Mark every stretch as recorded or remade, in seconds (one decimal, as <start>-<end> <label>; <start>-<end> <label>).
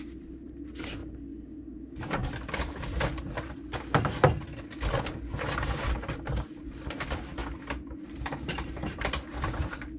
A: 0.0-1.0 remade; 1.0-1.6 recorded; 1.6-2.2 remade; 2.2-5.0 recorded; 5.0-7.4 remade; 7.4-8.1 recorded; 8.1-10.0 remade